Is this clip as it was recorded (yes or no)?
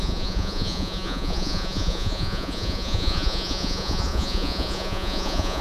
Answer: no